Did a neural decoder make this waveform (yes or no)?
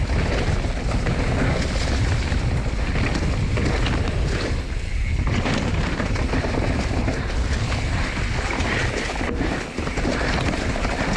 no